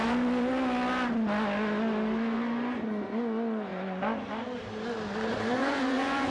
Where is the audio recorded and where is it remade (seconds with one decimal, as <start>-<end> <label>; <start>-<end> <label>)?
0.0-5.6 recorded; 5.6-6.3 remade